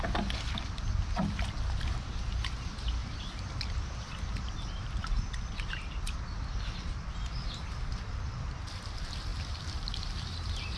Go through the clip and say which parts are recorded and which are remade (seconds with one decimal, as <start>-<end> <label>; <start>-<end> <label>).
0.0-3.0 recorded; 3.0-5.5 remade; 5.5-9.3 recorded; 9.3-10.8 remade